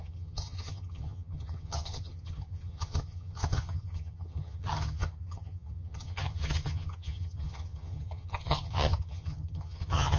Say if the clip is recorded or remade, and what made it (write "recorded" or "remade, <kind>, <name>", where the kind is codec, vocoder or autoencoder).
remade, vocoder, HiFi-GAN